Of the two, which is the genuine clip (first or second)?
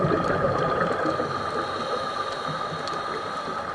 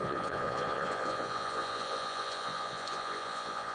first